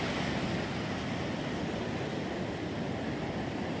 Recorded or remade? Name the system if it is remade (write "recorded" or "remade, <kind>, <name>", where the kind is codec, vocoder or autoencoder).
recorded